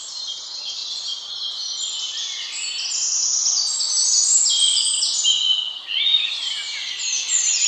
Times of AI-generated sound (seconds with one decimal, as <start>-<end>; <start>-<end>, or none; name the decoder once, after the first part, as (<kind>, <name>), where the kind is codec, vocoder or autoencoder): none